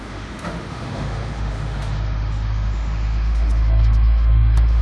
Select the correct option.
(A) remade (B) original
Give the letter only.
A